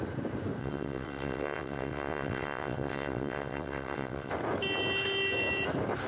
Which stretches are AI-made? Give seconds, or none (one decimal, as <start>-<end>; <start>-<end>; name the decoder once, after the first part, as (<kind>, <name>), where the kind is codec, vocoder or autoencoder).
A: 0.6-4.3 (vocoder, WaveNeXt)